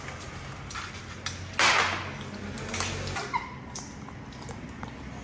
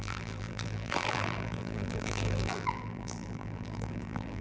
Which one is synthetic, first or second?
second